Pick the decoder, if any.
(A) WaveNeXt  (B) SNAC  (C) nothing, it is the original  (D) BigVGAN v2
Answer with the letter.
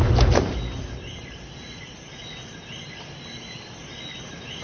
C